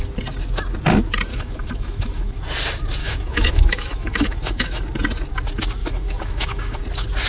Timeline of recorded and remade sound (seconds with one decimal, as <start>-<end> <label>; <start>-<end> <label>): 0.0-1.3 recorded; 1.3-2.4 remade; 2.4-3.0 recorded; 3.0-4.8 remade; 4.8-5.8 recorded; 5.8-6.8 remade; 6.8-7.3 recorded